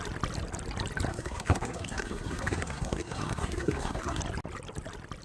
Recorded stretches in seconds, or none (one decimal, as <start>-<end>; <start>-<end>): 0.0-1.1; 4.2-5.2